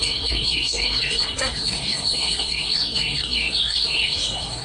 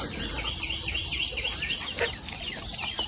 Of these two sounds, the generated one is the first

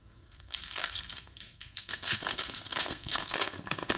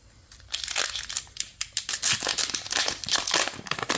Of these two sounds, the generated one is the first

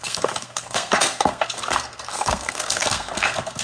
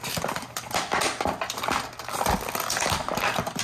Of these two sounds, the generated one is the first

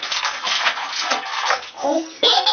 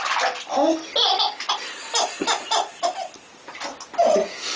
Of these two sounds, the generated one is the first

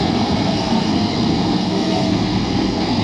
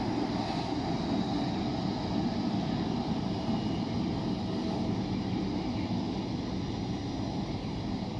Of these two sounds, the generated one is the first